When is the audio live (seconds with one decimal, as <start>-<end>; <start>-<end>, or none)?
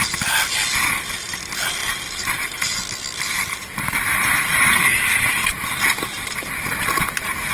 0.0-1.8; 5.0-5.4; 6.8-7.5